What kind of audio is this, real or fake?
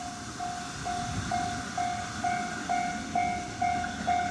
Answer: real